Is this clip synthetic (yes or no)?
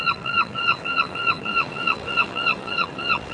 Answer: yes